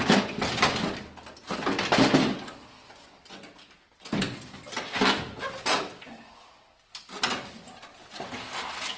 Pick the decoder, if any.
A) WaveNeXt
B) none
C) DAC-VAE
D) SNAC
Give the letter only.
B